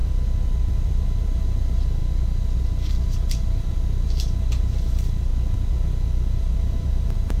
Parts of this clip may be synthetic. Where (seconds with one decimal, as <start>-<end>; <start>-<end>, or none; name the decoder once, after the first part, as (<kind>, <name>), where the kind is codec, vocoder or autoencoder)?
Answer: 0.8-2.0 (vocoder, BigVGAN v2); 2.9-5.3; 6.4-7.4